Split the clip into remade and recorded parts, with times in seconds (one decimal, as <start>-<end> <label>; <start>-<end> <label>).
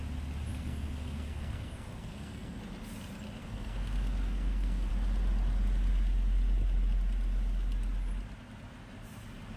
0.0-0.5 recorded; 0.5-2.6 remade; 2.6-3.4 recorded; 3.4-4.9 remade; 4.9-9.6 recorded